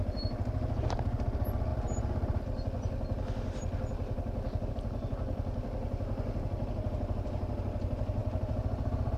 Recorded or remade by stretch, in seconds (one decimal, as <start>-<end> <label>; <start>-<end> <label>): 0.0-9.2 recorded